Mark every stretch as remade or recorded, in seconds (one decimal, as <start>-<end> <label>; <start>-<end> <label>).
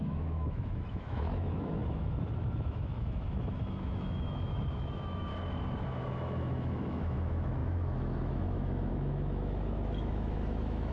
0.0-5.3 remade; 5.3-6.0 recorded; 6.0-10.9 remade